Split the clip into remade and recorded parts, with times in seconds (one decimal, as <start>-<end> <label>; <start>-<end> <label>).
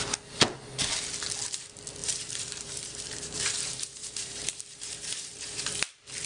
0.0-2.0 recorded; 2.0-5.7 remade; 5.7-6.3 recorded